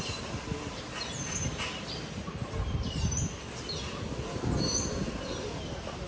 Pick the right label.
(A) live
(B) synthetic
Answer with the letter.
A